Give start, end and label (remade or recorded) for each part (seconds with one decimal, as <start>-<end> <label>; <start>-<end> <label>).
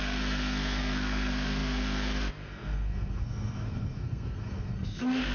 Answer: 0.0-5.3 remade